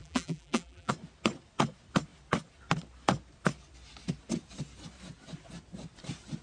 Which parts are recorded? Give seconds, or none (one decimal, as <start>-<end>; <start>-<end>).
0.9-6.4